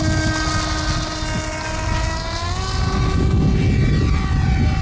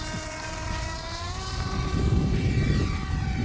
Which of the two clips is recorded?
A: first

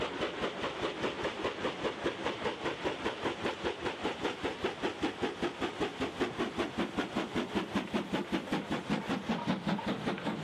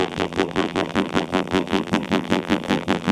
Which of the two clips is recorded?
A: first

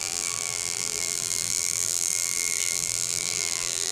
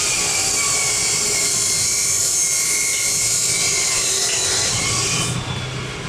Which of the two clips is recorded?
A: second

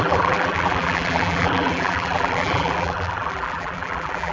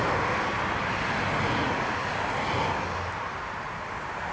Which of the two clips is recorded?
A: second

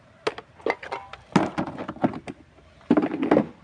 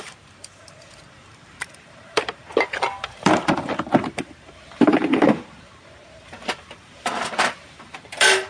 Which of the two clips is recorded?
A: first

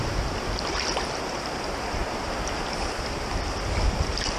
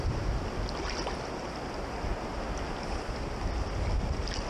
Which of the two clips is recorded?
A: second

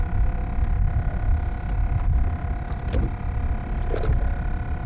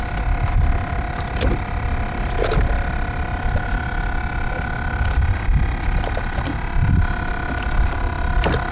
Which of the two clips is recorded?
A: first